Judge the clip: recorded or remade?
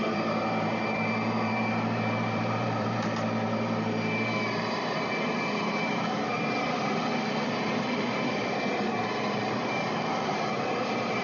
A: remade